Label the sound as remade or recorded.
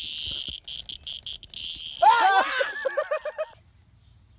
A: recorded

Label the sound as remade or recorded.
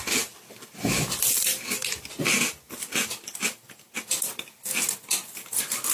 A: recorded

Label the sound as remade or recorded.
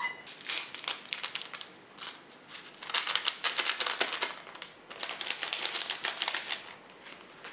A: recorded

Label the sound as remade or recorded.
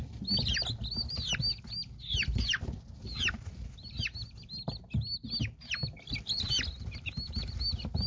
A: recorded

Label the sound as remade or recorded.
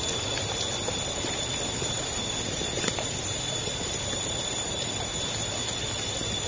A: recorded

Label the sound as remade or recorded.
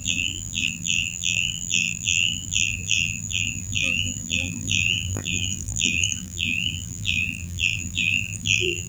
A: remade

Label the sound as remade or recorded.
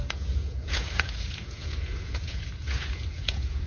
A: remade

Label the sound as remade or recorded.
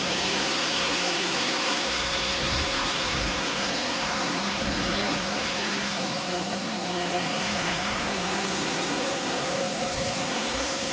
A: remade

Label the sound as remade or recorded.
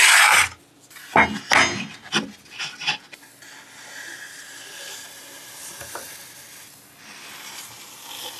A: recorded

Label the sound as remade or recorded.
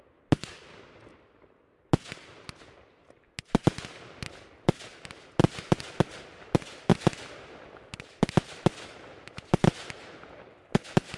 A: recorded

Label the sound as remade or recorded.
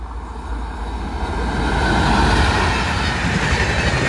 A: recorded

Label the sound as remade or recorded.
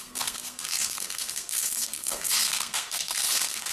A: remade